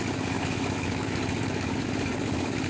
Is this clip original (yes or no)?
no